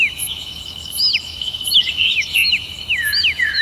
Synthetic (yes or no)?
yes